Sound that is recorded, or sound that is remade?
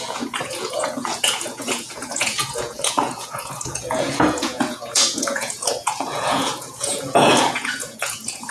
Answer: remade